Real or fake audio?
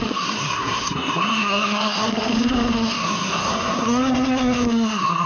fake